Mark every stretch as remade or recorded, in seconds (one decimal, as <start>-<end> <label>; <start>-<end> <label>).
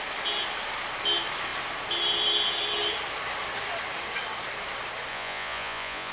0.0-5.1 recorded; 5.1-6.1 remade